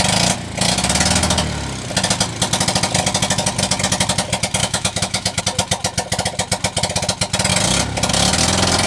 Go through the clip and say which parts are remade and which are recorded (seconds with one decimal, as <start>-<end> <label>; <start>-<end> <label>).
0.0-4.6 recorded; 4.6-5.4 remade; 5.4-8.9 recorded